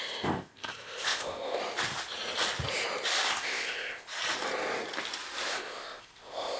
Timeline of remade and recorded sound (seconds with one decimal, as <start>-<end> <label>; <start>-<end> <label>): 0.0-1.6 remade; 1.6-3.3 recorded; 3.3-4.1 remade; 4.1-5.5 recorded; 5.5-6.6 remade

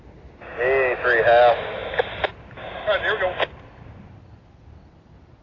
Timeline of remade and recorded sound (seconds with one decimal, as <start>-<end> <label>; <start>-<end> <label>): 0.0-5.4 recorded

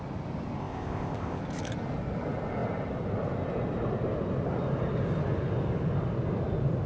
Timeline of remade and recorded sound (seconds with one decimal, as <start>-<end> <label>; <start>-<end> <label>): 0.0-0.6 recorded; 0.6-1.4 remade; 1.4-6.9 recorded

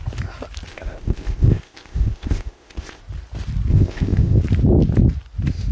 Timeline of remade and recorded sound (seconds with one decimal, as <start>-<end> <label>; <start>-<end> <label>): 0.0-0.7 recorded; 0.7-3.0 remade; 3.0-3.7 recorded; 3.7-4.4 remade; 4.4-5.7 recorded